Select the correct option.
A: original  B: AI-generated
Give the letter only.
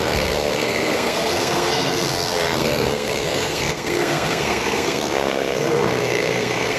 B